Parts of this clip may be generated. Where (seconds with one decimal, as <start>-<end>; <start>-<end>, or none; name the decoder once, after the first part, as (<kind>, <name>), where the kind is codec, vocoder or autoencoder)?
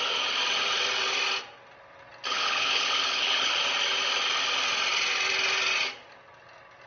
2.3-3.5 (codec, HILCodec)